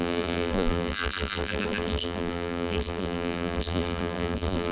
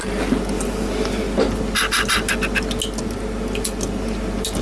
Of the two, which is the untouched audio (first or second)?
second